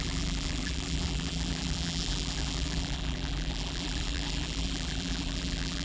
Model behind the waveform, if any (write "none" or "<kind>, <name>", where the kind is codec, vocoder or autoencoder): vocoder, BigVGAN v2